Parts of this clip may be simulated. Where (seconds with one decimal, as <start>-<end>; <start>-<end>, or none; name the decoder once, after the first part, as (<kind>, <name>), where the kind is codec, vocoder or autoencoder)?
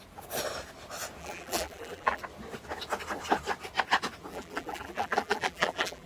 1.2-2.2 (vocoder, BigVGAN v2); 4.3-6.1